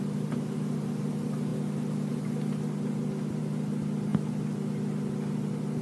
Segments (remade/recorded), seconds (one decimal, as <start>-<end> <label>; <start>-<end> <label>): 0.0-5.8 recorded